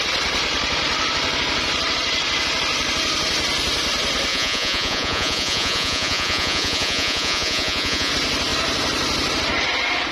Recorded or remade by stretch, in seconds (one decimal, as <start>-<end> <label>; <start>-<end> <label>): 0.0-4.3 recorded; 4.3-8.1 remade; 8.1-10.1 recorded